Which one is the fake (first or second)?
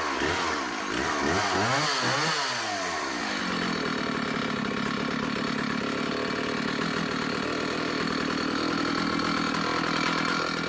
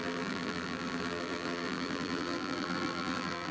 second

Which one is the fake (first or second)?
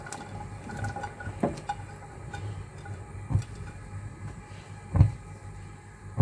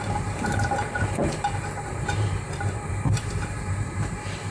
second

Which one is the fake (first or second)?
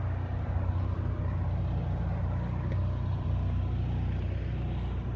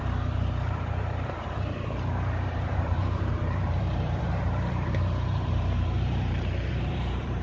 second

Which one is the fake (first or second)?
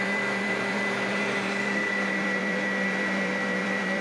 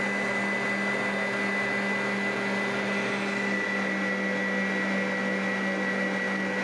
first